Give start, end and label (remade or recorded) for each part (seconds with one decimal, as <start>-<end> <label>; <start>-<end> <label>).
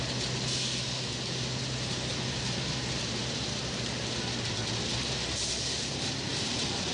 0.0-2.1 recorded; 2.1-3.2 remade; 3.2-4.9 recorded; 4.9-6.9 remade